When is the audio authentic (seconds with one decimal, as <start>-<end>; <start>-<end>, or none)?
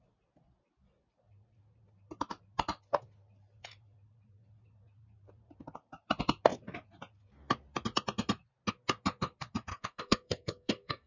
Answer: 0.0-9.7